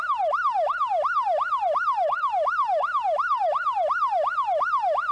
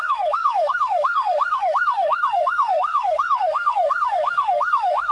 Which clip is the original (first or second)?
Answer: first